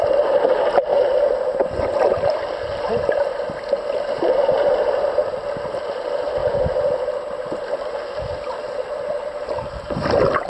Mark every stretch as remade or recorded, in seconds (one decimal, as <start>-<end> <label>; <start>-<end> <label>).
0.0-10.5 recorded